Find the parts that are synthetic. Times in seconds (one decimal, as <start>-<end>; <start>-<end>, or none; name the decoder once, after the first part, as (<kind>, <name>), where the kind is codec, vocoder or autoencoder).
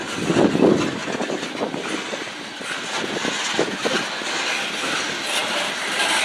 5.4-6.2 (vocoder, BigVGAN v2)